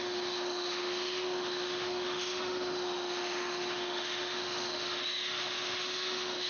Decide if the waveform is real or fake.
fake